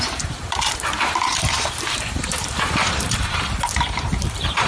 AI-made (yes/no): yes